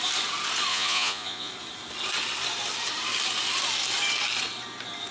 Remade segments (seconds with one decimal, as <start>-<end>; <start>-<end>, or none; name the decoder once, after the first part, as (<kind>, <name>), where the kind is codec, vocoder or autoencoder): 0.7-1.5 (vocoder, Vocos)